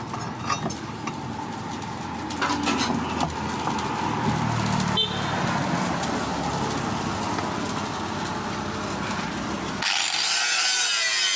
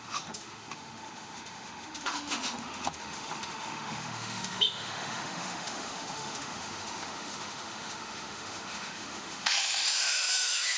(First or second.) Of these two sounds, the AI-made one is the second